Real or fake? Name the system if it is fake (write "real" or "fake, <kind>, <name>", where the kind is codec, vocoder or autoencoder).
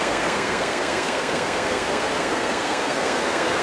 fake, codec, SNAC